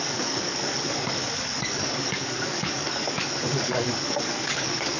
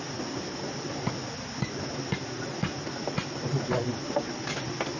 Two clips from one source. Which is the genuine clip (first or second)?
second